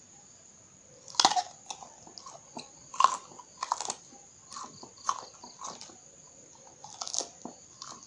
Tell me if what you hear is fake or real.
real